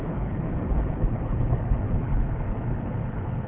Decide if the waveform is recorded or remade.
remade